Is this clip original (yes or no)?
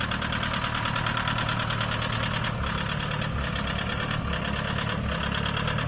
yes